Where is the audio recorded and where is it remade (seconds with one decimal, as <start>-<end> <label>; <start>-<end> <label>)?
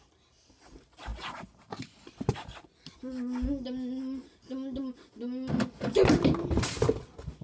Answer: 0.0-7.4 recorded